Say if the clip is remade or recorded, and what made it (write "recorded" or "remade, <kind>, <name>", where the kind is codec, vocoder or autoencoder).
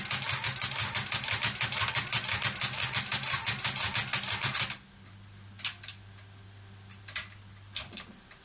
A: recorded